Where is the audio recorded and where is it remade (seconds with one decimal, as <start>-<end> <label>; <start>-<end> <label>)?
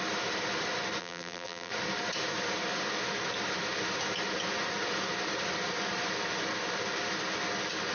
0.0-1.0 recorded; 1.0-1.7 remade; 1.7-7.9 recorded